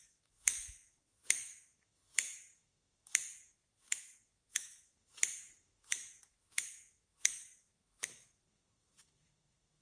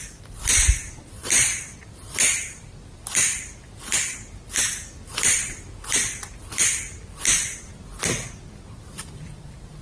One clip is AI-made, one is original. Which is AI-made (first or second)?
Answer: first